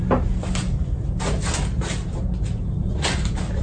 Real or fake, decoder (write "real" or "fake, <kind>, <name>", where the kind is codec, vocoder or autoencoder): real